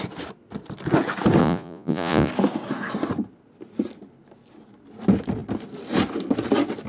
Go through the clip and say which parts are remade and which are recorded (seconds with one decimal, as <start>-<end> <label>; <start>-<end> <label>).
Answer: 0.0-1.4 recorded; 1.4-2.3 remade; 2.3-6.9 recorded